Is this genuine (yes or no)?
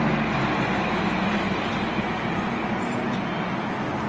yes